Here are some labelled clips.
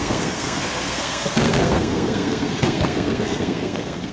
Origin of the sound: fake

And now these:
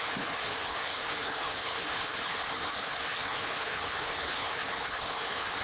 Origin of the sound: fake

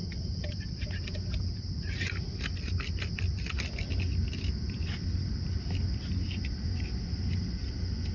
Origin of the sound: real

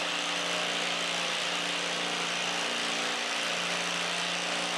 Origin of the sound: real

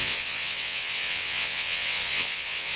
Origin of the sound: fake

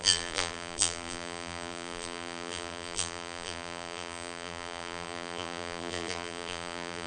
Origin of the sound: fake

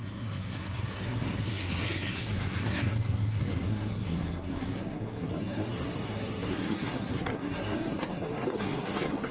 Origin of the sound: fake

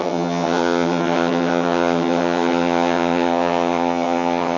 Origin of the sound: fake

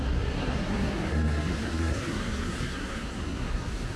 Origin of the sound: fake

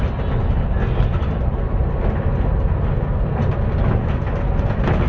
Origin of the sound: real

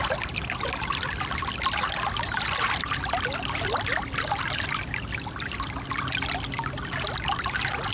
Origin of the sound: real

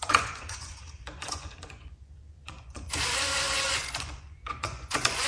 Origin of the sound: fake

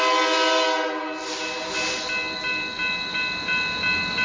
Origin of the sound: real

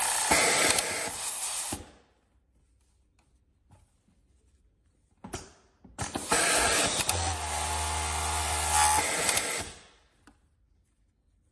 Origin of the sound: real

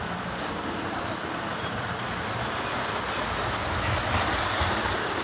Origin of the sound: real